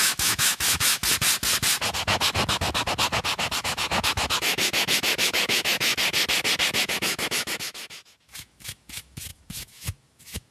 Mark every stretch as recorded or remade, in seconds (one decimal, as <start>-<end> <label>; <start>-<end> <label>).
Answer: 0.0-1.0 remade; 1.0-3.6 recorded; 3.6-5.9 remade; 5.9-6.8 recorded; 6.8-10.5 remade